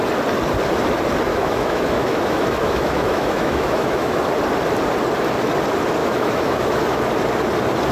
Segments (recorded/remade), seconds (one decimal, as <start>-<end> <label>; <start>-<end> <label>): 0.0-1.3 recorded; 1.3-4.3 remade; 4.3-6.0 recorded; 6.0-7.0 remade; 7.0-7.9 recorded